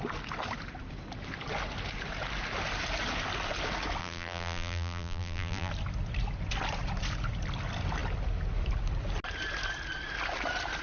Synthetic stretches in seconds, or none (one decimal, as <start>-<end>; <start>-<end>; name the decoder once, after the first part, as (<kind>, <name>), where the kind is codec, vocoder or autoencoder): 4.0-5.7 (vocoder, BigVGAN v2)